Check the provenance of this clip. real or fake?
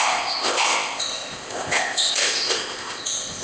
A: fake